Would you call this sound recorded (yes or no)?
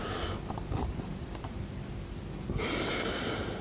no